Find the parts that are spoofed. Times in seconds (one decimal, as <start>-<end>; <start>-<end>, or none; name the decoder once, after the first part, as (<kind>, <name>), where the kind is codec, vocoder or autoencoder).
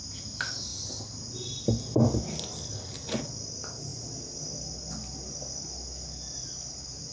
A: none